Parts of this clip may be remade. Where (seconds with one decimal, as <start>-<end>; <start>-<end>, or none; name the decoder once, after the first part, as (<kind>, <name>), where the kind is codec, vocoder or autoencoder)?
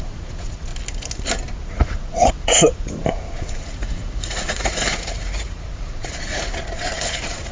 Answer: 0.0-0.7 (vocoder, Vocos); 1.7-7.5